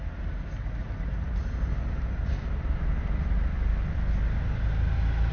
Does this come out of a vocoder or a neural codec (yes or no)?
no